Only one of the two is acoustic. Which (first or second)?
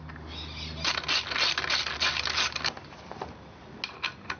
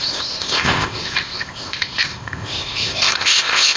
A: first